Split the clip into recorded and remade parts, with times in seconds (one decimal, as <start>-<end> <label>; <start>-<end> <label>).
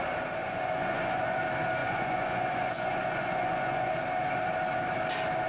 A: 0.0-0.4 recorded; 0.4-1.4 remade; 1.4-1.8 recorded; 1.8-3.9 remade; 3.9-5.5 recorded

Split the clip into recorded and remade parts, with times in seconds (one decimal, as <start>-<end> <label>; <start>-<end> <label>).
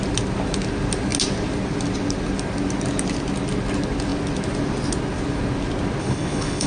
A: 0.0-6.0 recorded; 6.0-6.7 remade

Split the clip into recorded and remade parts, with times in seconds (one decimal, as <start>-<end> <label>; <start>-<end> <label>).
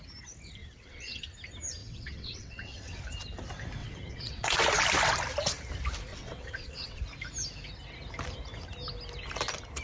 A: 0.0-0.6 recorded; 0.6-1.2 remade; 1.2-1.8 recorded; 1.8-3.0 remade; 3.0-3.8 recorded; 3.8-4.6 remade; 4.6-6.1 recorded; 6.1-7.0 remade; 7.0-9.8 recorded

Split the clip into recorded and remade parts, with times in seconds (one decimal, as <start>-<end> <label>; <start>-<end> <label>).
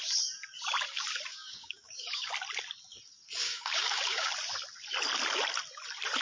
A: 0.0-1.3 recorded; 1.3-2.3 remade; 2.3-3.4 recorded; 3.4-4.3 remade; 4.3-6.2 recorded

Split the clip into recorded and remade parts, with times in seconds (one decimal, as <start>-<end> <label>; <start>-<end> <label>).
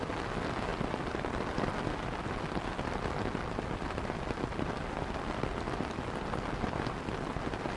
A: 0.0-0.7 recorded; 0.7-5.4 remade; 5.4-7.8 recorded